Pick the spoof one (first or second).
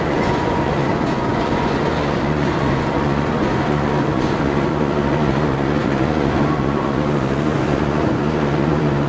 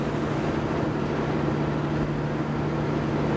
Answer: first